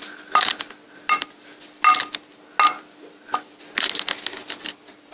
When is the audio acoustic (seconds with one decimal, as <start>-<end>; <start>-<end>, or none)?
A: 0.0-5.1